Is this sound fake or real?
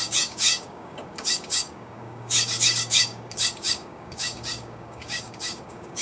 fake